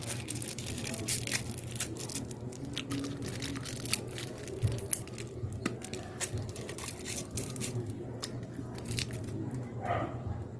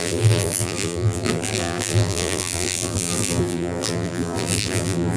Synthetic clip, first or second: second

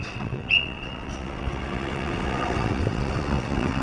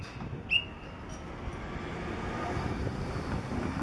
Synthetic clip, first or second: first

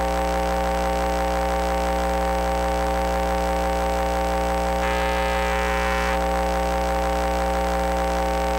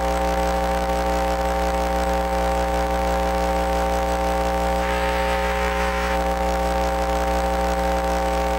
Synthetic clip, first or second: second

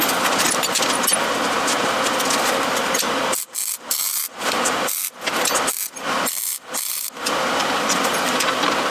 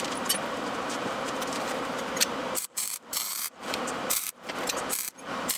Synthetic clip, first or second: second